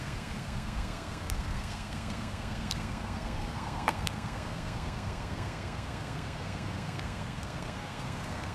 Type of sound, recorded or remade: remade